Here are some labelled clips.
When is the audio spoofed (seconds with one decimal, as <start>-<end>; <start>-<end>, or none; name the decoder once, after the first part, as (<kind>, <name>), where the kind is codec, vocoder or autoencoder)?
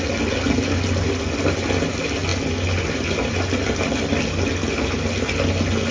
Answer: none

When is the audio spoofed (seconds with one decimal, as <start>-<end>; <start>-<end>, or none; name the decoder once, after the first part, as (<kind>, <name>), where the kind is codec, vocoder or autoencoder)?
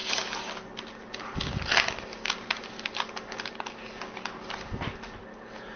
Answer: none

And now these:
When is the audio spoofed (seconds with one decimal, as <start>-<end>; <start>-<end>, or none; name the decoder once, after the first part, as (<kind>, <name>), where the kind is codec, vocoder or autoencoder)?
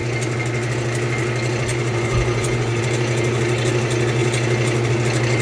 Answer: 1.7-2.8 (vocoder, Vocos)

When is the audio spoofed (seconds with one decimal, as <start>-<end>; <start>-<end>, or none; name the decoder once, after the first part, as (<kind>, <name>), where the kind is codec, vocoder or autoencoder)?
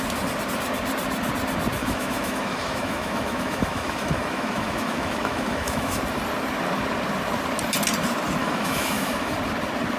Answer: 1.8-6.0 (autoencoder, DAC-VAE); 8.4-9.3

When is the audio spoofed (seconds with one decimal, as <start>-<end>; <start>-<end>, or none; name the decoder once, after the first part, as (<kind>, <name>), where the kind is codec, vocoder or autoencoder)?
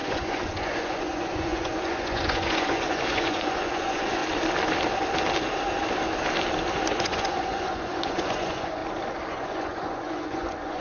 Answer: 0.0-4.2 (vocoder, Vocos); 6.9-8.8; 9.3-10.8